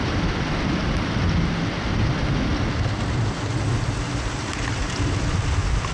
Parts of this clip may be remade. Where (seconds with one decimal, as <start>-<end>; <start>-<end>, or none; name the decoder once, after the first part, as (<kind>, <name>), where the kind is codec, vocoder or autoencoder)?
none

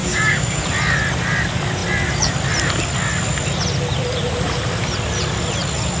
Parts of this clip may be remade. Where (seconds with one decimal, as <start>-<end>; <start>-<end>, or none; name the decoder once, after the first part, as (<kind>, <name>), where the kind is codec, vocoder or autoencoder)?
0.0-0.6 (codec, DAC)

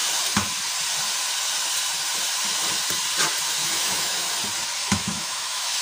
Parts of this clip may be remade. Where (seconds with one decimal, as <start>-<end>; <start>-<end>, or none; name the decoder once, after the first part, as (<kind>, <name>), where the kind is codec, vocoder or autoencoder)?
3.6-4.3 (autoencoder, DAC-VAE); 4.8-5.8

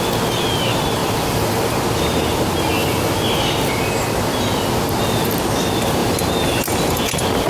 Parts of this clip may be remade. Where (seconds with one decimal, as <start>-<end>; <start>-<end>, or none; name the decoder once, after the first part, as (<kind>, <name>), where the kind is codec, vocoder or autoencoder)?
none

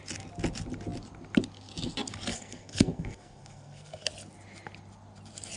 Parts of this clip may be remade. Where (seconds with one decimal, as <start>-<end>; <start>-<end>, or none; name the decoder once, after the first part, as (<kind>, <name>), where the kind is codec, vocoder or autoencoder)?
2.3-4.1 (codec, SNAC)